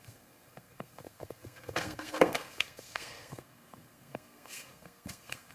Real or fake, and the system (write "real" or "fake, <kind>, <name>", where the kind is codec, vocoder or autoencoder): fake, codec, SNAC